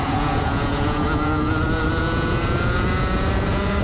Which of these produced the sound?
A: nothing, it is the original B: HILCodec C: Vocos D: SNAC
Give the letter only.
C